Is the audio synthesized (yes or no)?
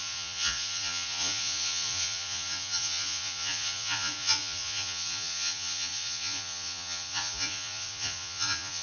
yes